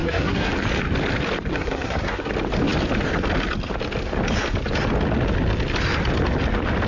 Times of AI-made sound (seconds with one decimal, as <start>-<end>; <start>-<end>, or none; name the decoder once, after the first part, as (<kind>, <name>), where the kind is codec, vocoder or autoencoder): 0.0-0.5 (codec, SNAC); 1.5-2.3